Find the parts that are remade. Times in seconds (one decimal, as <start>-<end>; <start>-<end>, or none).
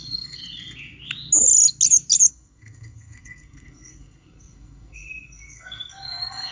0.0-0.4; 2.3-6.5